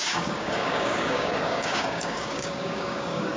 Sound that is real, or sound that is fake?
fake